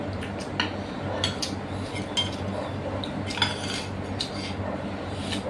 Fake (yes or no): no